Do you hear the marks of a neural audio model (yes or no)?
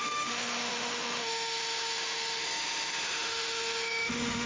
yes